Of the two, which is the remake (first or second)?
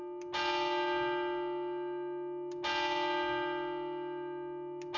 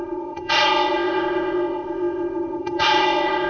second